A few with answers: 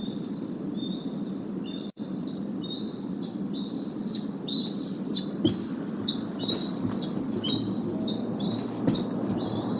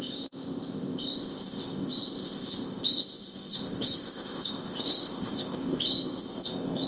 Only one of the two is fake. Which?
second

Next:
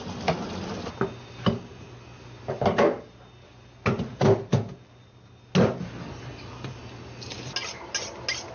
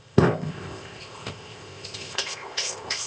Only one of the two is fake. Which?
second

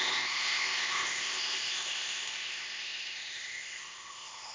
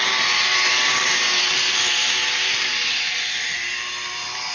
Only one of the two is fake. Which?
first